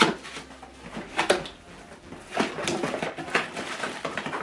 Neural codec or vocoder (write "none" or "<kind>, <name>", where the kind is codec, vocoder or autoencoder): none